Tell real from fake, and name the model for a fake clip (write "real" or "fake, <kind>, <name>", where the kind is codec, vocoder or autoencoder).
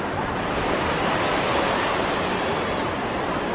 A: real